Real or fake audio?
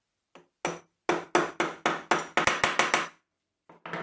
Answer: real